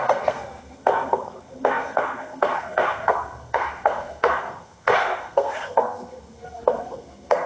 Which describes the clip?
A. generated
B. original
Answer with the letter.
A